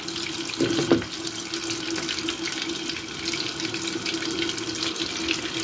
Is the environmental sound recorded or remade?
recorded